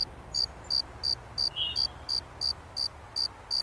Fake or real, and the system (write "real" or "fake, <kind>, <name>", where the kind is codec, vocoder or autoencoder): real